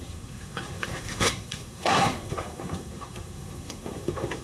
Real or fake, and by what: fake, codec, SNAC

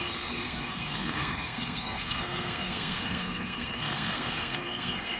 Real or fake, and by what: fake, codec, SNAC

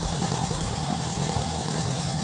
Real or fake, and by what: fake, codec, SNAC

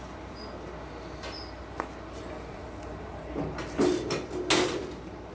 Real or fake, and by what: real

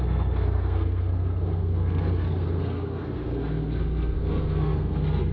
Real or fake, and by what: fake, codec, SNAC